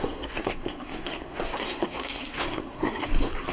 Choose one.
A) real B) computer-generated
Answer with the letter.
B